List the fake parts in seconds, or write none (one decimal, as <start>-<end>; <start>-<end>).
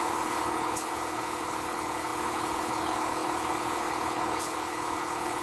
0.0-5.4